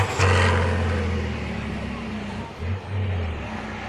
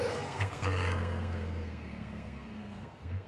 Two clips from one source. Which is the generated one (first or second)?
second